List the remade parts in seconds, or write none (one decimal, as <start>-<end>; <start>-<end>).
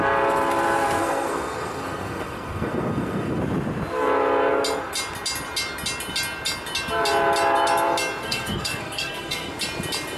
1.0-3.4; 8.2-9.5